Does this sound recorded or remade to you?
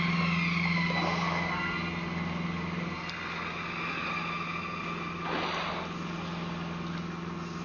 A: recorded